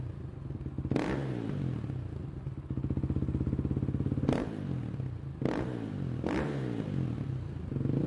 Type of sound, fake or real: real